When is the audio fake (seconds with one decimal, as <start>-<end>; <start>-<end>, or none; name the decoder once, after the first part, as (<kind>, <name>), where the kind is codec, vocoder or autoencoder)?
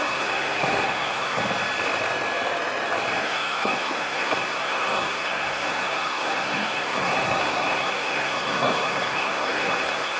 0.0-1.4 (codec, SNAC); 3.2-10.2